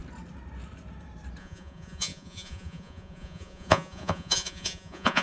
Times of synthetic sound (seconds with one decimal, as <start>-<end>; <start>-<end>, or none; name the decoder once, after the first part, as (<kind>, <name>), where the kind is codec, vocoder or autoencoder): 1.4-5.2 (vocoder, Vocos)